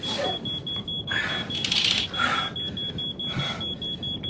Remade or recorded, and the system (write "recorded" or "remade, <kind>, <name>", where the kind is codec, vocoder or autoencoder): recorded